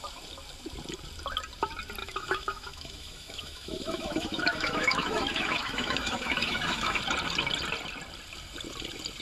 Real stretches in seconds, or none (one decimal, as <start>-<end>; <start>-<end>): 0.0-2.0; 7.0-9.2